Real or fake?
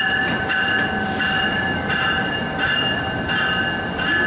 real